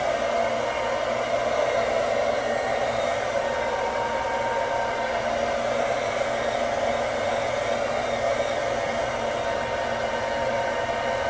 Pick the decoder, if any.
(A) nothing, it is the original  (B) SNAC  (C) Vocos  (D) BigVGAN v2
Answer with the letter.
A